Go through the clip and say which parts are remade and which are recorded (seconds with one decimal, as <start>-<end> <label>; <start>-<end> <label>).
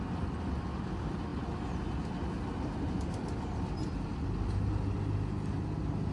0.0-6.1 recorded